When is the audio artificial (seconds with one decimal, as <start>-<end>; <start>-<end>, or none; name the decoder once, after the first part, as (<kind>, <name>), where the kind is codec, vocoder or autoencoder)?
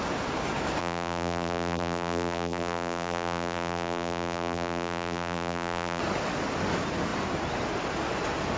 0.8-6.0 (vocoder, BigVGAN v2)